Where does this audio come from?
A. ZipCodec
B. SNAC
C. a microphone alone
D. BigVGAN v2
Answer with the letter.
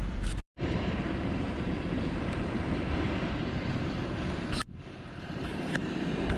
D